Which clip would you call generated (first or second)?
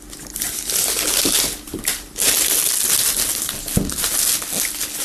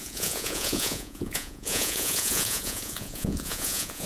second